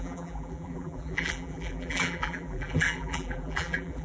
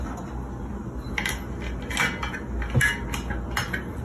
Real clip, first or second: second